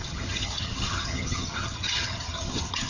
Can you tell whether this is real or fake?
fake